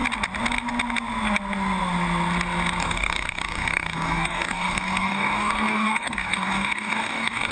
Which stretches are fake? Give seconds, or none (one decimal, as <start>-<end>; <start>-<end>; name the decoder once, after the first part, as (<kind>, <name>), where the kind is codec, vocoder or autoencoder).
2.8-7.5 (codec, DAC)